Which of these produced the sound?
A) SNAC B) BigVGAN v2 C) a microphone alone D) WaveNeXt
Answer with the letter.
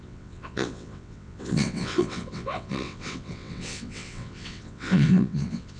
D